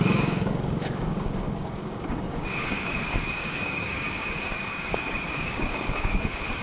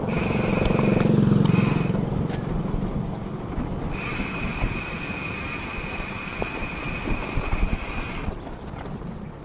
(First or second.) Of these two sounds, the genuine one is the second